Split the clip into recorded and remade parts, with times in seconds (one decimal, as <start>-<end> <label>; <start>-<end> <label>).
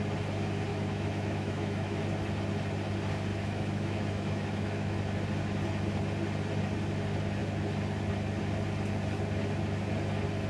0.0-0.7 recorded; 0.7-2.0 remade; 2.0-3.3 recorded; 3.3-5.0 remade; 5.0-10.5 recorded